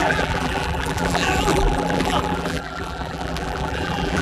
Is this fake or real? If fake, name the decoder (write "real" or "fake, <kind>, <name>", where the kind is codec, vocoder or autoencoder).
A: fake, vocoder, BigVGAN v2